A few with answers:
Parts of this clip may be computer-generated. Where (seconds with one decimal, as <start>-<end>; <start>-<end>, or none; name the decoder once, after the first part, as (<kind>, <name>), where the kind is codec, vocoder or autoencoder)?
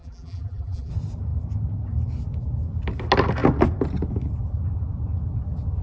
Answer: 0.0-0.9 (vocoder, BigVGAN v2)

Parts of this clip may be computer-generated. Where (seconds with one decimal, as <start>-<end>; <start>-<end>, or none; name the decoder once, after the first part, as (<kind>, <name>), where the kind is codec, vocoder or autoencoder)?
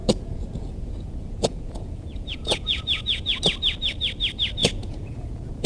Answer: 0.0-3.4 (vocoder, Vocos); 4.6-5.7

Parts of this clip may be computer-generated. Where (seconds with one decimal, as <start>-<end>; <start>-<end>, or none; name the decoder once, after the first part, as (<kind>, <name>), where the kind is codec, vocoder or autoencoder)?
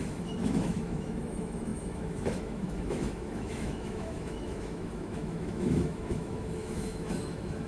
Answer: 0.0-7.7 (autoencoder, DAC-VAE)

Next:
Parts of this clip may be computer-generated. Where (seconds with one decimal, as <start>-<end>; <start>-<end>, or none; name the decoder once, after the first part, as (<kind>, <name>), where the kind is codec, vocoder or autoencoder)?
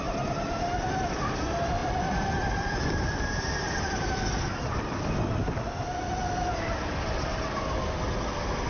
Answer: none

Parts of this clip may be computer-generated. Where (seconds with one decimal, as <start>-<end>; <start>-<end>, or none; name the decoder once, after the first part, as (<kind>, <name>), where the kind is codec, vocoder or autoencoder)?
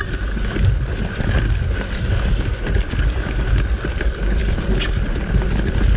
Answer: none